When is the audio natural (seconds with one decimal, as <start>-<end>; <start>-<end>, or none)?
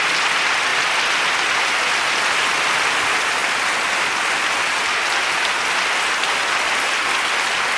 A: 0.0-7.8